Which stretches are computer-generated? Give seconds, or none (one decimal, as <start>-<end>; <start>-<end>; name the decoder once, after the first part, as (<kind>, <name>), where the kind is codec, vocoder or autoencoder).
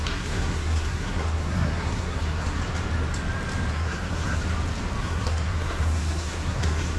0.0-2.6 (codec, SNAC); 3.7-4.4; 5.0-7.0